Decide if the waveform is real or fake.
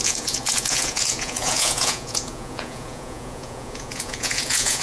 fake